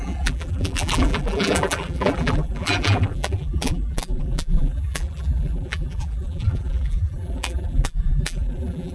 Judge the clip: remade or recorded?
remade